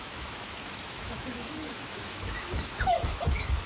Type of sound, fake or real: fake